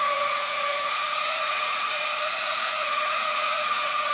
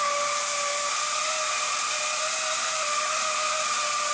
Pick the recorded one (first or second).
second